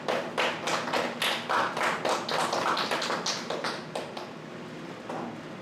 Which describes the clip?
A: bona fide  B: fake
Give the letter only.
A